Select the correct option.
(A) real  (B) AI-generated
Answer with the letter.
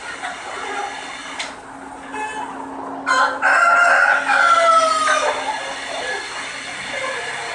A